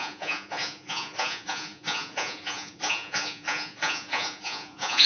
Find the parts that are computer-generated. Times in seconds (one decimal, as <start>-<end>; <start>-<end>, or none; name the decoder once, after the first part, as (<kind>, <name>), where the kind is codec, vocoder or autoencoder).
0.0-5.1 (vocoder, Vocos)

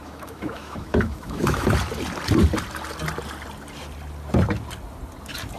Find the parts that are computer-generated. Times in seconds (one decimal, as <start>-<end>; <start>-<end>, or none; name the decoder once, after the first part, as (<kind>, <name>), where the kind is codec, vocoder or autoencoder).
0.0-1.7 (autoencoder, DAC-VAE)

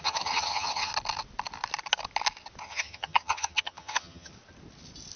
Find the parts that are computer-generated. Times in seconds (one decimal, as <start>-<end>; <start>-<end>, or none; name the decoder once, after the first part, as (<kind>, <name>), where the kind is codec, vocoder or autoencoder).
0.0-0.9 (vocoder, HiFi-GAN); 2.6-4.3

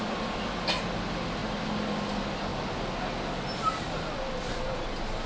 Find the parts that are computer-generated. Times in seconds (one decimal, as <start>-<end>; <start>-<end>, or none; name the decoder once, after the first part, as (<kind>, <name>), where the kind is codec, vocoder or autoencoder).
none

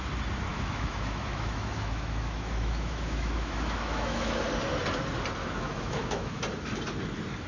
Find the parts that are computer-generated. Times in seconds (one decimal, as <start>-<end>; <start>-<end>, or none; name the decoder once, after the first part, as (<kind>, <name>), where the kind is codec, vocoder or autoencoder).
0.5-4.4 (autoencoder, DAC-VAE); 5.4-6.4

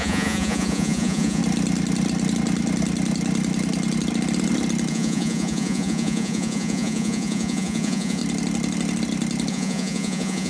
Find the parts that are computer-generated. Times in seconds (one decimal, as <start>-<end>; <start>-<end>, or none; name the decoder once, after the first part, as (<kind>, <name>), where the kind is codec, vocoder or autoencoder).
0.0-1.4 (vocoder, Vocos); 4.9-8.2; 9.5-10.5

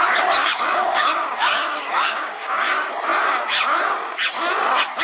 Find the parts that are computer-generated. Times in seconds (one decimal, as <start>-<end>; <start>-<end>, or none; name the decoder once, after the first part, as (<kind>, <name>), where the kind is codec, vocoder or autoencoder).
0.4-2.7 (codec, DAC)

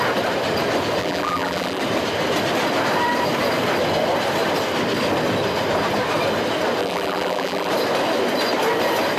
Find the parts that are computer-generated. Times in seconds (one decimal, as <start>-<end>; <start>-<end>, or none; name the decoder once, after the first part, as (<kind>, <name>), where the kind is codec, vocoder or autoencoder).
1.0-1.8 (vocoder, BigVGAN v2); 6.8-7.7